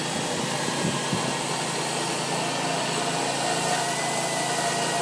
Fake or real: real